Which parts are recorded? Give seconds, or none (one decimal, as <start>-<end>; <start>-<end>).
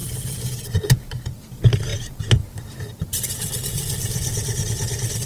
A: 0.0-5.3